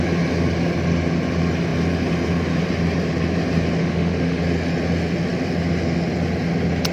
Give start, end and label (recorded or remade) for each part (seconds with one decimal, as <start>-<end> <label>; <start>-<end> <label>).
0.0-3.8 recorded; 3.8-4.4 remade; 4.4-6.9 recorded

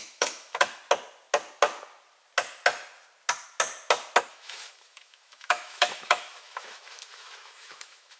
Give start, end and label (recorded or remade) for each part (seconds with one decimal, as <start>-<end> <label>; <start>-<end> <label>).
0.0-0.8 remade; 0.8-4.3 recorded; 4.3-8.2 remade

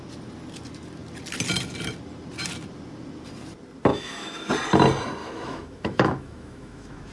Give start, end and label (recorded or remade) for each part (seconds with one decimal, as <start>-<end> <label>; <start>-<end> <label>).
0.0-3.9 recorded; 3.9-4.5 remade; 4.5-5.2 recorded; 5.2-7.1 remade

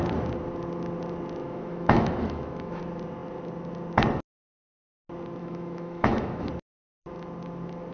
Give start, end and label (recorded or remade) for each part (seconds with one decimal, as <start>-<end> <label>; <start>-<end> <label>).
0.0-1.4 recorded; 1.4-2.8 remade; 2.8-5.4 recorded; 5.4-6.5 remade; 6.5-7.9 recorded

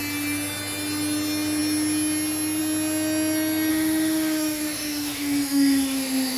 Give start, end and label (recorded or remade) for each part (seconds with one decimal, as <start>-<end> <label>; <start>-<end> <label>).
0.0-3.7 recorded; 3.7-6.4 remade

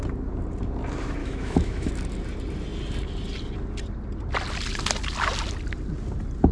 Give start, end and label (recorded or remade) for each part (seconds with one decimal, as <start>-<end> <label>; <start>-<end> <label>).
0.0-1.2 recorded; 1.2-1.9 remade; 1.9-6.5 recorded

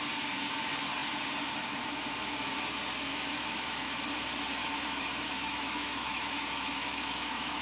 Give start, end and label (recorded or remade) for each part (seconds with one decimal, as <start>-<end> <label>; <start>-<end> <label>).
0.0-3.1 recorded; 3.1-4.0 remade; 4.0-4.6 recorded; 4.6-7.6 remade

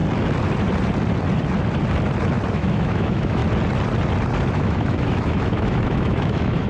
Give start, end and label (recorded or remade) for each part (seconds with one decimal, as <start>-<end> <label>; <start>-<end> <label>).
0.0-2.5 recorded; 2.5-3.4 remade; 3.4-4.5 recorded; 4.5-6.7 remade